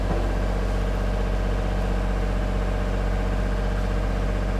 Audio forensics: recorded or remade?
recorded